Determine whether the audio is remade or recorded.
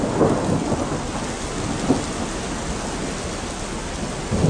recorded